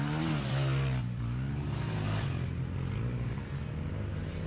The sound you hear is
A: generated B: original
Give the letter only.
B